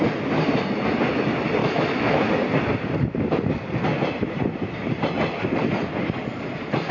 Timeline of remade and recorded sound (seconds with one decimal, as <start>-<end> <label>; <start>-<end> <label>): 0.0-1.6 recorded; 1.6-2.3 remade; 2.3-6.9 recorded